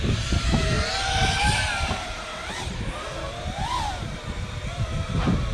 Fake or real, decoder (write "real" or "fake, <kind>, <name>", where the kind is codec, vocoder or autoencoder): fake, vocoder, BigVGAN v2